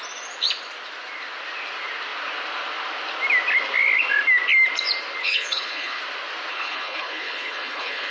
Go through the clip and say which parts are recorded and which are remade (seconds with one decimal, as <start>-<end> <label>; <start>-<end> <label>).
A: 0.0-5.2 recorded; 5.2-6.0 remade; 6.0-6.5 recorded; 6.5-8.1 remade